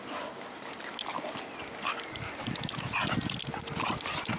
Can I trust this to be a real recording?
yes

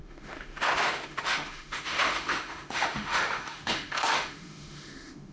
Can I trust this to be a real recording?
no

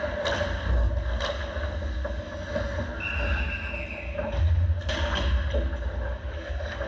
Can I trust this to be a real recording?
yes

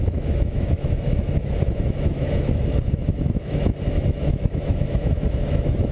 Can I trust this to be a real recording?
no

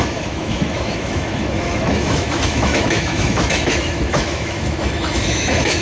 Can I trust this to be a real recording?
no